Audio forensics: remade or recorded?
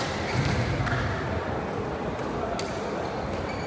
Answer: recorded